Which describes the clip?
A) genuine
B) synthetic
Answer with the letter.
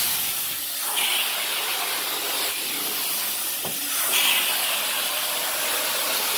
A